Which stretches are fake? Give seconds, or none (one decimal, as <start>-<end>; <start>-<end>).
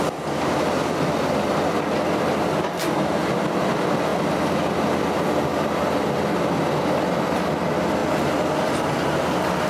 none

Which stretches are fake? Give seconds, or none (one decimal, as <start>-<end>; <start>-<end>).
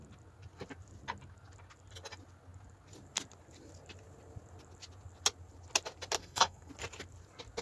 6.2-6.7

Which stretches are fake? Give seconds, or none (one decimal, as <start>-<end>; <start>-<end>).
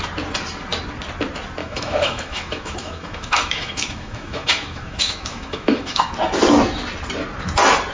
1.6-6.1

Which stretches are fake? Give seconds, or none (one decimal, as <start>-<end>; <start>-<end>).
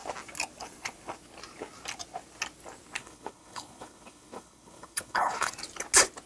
3.0-5.5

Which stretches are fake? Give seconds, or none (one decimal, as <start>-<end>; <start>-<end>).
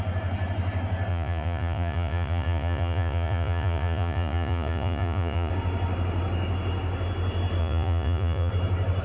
1.1-5.5; 7.6-8.5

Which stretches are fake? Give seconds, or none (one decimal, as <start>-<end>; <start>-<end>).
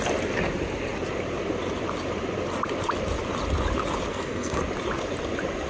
4.1-4.6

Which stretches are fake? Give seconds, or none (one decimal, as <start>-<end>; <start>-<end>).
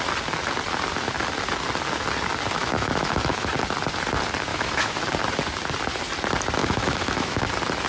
2.6-3.5; 4.5-5.0; 6.6-7.4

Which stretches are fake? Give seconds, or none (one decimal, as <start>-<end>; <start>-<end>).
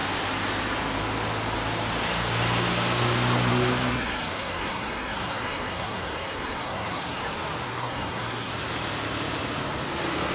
3.9-7.2; 7.7-8.5